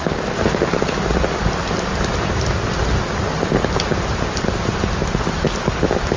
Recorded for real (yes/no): yes